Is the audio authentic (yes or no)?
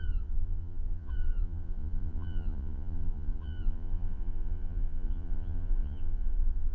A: no